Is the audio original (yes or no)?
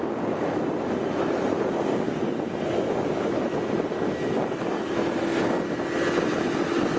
yes